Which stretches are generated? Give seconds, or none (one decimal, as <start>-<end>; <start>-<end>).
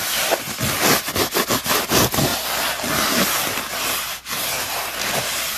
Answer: none